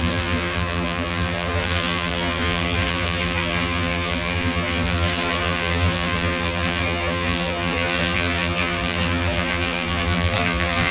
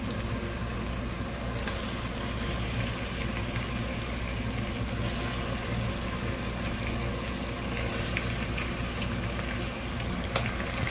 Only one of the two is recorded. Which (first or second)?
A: second